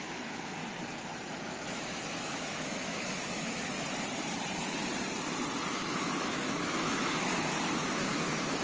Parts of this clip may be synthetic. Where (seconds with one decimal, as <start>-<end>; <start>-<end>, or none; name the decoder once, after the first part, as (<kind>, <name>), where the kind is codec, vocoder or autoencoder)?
0.0-0.6 (autoencoder, DAC-VAE); 1.5-3.7; 5.7-8.6